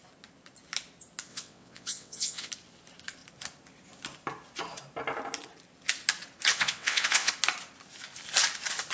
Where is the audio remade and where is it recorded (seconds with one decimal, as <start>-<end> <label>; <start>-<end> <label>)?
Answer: 0.0-1.3 recorded; 1.3-2.5 remade; 2.5-6.5 recorded; 6.5-7.3 remade; 7.3-8.9 recorded